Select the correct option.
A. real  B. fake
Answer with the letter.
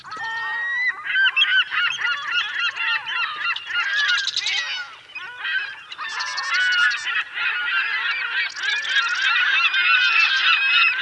A